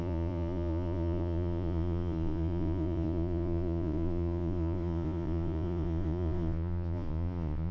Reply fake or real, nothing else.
fake